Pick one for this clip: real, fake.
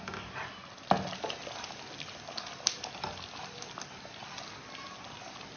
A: real